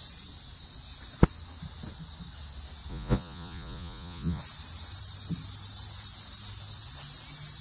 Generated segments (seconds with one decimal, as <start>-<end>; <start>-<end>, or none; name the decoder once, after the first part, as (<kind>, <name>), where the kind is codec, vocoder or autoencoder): 2.9-4.4 (vocoder, Vocos)